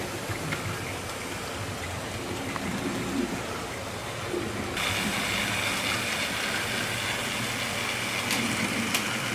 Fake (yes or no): no